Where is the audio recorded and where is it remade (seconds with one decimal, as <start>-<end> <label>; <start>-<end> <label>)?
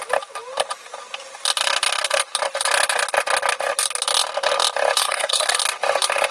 0.0-5.0 recorded; 5.0-5.6 remade; 5.6-6.3 recorded